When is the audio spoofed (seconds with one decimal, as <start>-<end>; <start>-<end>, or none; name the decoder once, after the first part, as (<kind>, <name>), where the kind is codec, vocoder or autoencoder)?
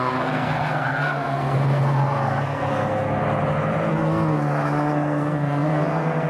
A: 0.0-3.2 (codec, SNAC); 3.9-6.3